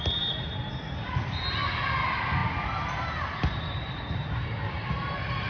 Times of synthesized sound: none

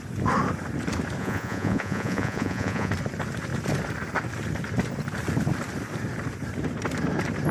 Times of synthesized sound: 1.2-2.9 (vocoder, Vocos)

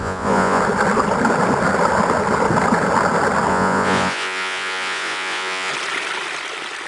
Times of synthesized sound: 0.0-0.6 (vocoder, Vocos); 3.5-5.7

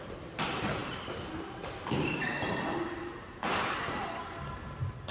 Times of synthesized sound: none